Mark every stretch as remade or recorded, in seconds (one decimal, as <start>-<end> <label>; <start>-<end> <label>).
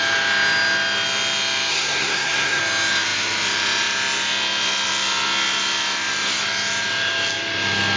0.0-1.7 recorded; 1.7-2.6 remade; 2.6-8.0 recorded